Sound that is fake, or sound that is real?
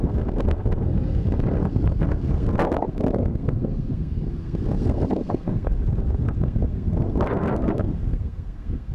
fake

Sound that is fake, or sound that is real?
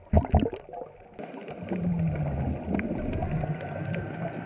real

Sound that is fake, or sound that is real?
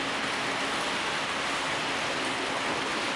real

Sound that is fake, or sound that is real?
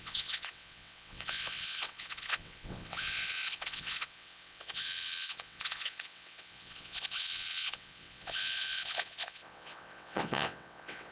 fake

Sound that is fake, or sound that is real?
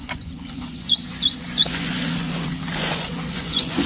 fake